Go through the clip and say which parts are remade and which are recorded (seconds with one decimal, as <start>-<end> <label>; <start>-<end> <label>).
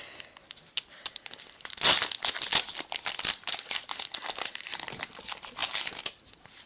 0.0-6.7 recorded